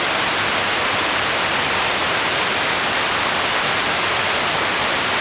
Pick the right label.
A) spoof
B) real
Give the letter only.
B